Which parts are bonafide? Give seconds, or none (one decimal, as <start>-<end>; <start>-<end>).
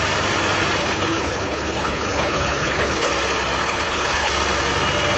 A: 0.0-0.8; 3.1-3.6; 4.3-5.2